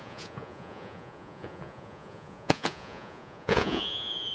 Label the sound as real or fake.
fake